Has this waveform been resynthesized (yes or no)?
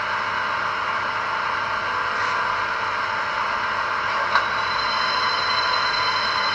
no